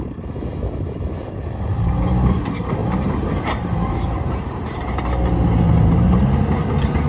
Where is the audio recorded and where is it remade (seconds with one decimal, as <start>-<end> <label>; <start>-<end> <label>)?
0.0-2.8 recorded; 2.8-5.0 remade; 5.0-7.1 recorded